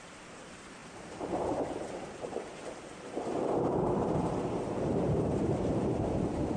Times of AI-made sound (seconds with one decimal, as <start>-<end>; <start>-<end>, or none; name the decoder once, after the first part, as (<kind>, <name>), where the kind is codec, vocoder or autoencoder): 0.0-6.6 (vocoder, BigVGAN v2)